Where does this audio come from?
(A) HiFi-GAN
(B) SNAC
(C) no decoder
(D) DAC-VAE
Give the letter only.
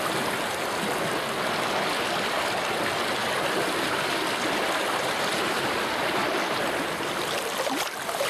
C